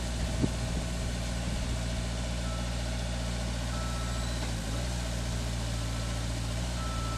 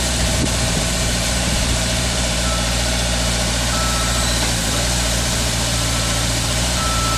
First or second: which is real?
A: first